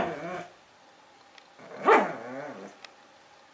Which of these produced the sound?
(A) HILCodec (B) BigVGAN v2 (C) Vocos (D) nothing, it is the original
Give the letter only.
D